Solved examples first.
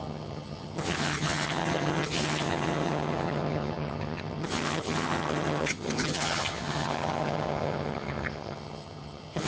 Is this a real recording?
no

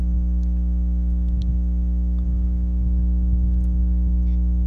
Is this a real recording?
no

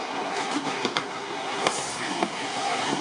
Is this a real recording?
no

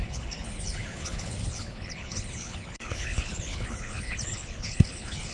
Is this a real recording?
no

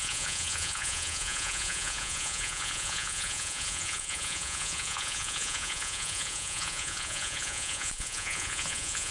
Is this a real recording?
no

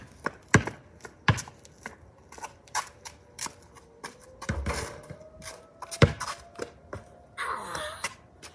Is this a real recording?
yes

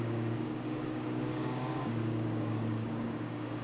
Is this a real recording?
no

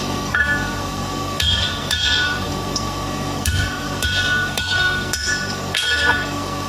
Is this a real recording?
no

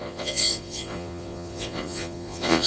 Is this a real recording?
no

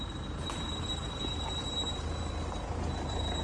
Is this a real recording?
yes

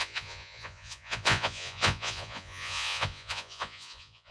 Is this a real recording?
no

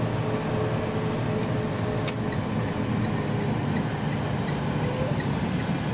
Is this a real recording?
yes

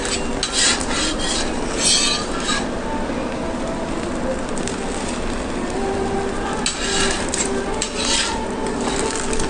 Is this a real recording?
yes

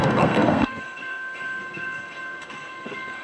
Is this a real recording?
no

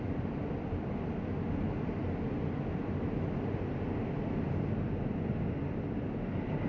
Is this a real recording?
yes